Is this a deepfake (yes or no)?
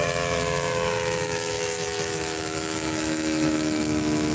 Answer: yes